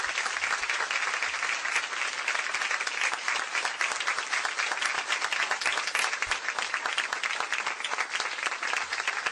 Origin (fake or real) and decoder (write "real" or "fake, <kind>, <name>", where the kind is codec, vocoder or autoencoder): real